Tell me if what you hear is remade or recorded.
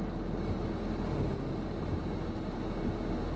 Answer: recorded